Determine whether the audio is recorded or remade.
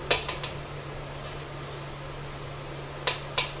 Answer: recorded